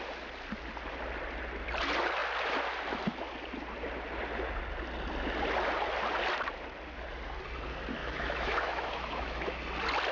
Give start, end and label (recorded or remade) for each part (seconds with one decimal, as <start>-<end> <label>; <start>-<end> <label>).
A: 0.0-8.0 recorded; 8.0-9.6 remade; 9.6-10.1 recorded